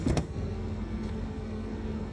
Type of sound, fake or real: fake